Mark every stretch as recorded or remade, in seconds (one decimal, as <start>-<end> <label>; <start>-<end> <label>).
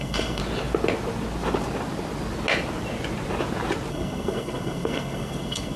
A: 0.0-0.4 remade; 0.4-3.9 recorded; 3.9-5.8 remade